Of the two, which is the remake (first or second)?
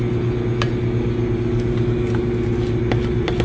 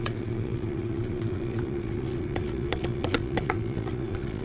second